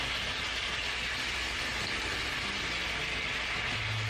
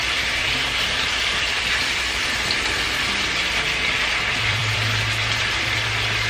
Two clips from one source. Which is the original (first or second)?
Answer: first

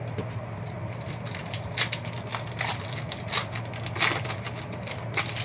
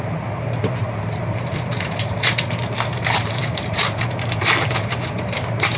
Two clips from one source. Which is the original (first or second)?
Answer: first